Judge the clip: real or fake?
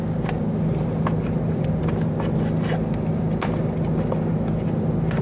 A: real